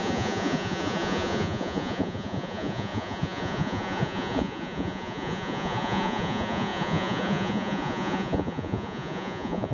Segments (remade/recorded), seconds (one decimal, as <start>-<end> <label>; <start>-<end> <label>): 0.0-9.7 remade